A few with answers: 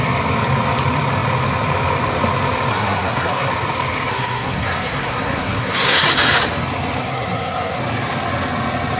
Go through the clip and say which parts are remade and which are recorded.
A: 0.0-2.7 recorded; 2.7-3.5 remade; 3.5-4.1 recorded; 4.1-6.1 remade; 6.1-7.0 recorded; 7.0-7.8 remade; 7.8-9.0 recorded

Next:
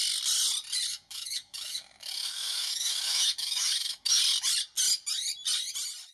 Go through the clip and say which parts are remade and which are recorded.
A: 0.0-0.9 recorded; 0.9-4.2 remade; 4.2-6.1 recorded

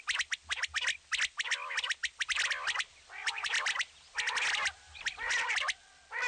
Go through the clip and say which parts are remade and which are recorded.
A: 0.0-2.0 recorded; 2.0-2.8 remade; 2.8-3.2 recorded; 3.2-4.0 remade; 4.0-6.3 recorded